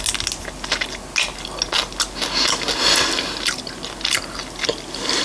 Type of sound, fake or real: real